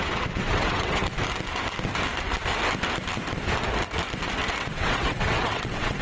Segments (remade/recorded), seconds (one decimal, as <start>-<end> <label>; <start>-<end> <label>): 0.0-1.0 remade; 1.0-4.6 recorded; 4.6-6.0 remade